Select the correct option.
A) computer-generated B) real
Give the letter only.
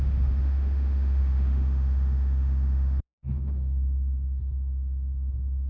A